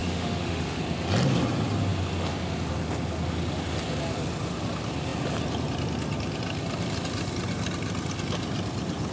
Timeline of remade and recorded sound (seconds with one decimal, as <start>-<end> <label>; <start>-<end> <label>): 0.0-0.8 remade; 0.8-9.1 recorded